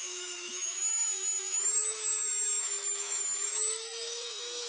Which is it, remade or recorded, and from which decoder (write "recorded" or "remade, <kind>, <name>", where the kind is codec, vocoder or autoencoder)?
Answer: remade, autoencoder, DAC-VAE